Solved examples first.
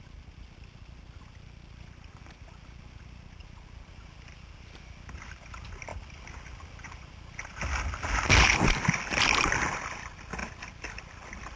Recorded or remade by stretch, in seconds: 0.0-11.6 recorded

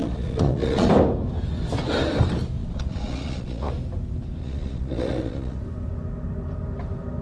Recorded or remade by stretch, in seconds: 0.0-0.9 remade; 0.9-2.6 recorded; 2.6-3.7 remade; 3.7-4.4 recorded; 4.4-5.6 remade; 5.6-7.2 recorded